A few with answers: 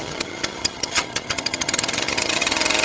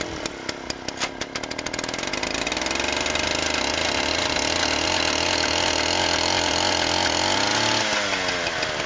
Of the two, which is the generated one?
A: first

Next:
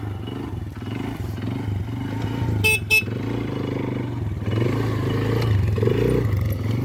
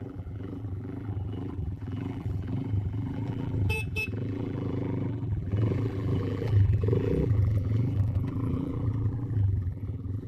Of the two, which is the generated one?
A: second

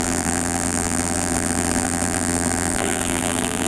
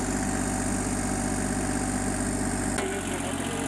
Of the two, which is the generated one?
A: first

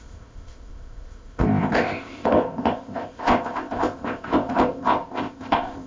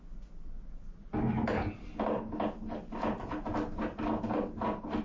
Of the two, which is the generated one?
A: first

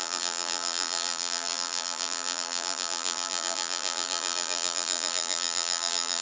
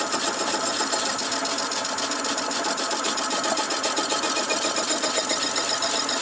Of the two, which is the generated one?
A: first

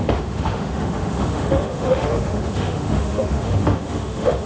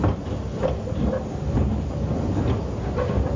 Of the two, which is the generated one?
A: first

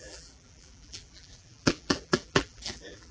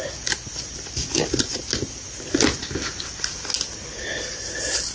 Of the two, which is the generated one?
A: first